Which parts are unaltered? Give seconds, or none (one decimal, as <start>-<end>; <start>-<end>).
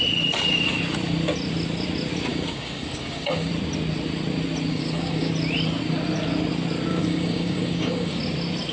0.0-2.3; 3.5-4.7; 5.3-6.9; 8.2-8.7